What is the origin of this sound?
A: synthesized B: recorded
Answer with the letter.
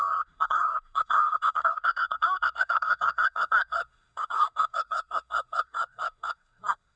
A